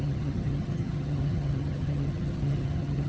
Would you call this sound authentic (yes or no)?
no